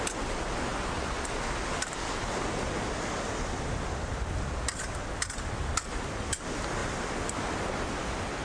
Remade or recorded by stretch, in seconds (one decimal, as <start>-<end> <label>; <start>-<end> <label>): 0.0-8.4 recorded